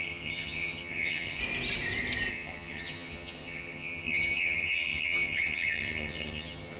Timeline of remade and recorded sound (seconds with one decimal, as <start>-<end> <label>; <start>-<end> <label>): 0.0-1.4 remade; 1.4-2.3 recorded; 2.3-6.8 remade